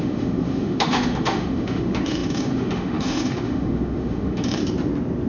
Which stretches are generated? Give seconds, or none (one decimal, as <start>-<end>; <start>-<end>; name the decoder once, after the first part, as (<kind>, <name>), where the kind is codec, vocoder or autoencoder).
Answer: 0.0-4.6 (autoencoder, DAC-VAE)